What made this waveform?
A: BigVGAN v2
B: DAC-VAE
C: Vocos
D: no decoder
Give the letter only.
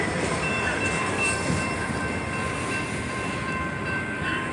A